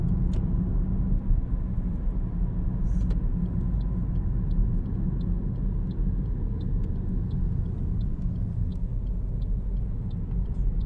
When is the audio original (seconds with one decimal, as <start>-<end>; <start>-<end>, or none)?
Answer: 0.0-10.9

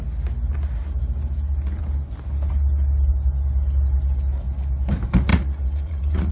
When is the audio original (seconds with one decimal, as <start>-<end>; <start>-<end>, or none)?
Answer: 0.0-5.3

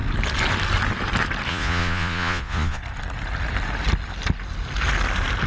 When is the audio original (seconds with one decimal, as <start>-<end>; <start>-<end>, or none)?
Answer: 0.0-1.5; 2.8-5.5

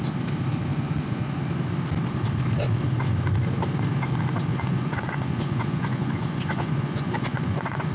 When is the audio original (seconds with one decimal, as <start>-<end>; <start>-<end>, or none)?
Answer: 0.0-0.7; 1.4-4.5

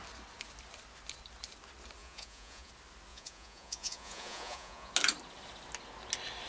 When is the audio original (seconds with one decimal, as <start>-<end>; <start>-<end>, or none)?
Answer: 0.0-2.0; 2.7-3.1; 4.9-6.5